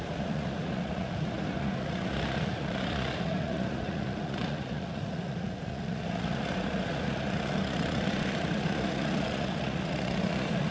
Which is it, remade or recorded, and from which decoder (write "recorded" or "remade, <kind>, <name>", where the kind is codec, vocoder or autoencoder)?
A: remade, vocoder, Vocos